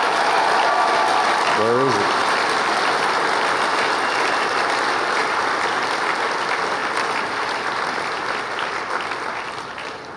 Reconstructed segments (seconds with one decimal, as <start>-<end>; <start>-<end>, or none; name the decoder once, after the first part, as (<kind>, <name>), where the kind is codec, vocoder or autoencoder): 2.2-2.9 (vocoder, BigVGAN v2); 5.2-5.7; 6.8-8.0

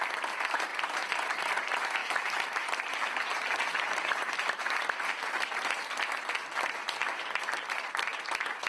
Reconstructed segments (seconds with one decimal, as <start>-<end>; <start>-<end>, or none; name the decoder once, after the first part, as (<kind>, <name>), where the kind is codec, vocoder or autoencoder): 0.7-1.3 (vocoder, BigVGAN v2); 2.0-5.6; 7.0-7.9

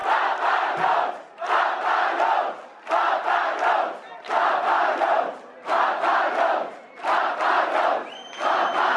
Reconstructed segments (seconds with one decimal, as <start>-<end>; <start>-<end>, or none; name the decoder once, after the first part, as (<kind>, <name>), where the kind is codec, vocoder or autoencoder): none

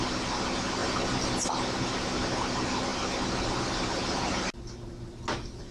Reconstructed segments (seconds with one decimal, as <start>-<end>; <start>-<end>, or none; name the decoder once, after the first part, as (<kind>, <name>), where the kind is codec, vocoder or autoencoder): none

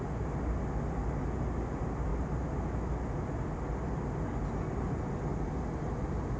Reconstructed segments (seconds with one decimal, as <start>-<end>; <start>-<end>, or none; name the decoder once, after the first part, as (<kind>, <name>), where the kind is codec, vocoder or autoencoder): 2.1-2.9 (vocoder, BigVGAN v2)

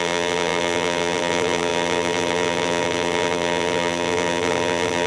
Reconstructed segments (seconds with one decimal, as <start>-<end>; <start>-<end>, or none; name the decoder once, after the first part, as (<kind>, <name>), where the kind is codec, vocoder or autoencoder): 0.0-5.1 (vocoder, BigVGAN v2)

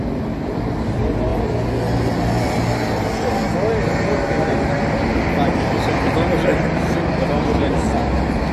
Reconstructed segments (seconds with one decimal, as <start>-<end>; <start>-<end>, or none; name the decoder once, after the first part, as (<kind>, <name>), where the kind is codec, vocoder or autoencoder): none